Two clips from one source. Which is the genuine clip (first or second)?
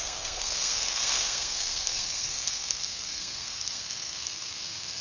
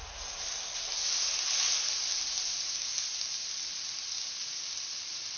second